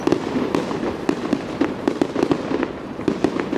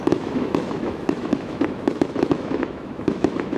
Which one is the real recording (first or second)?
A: first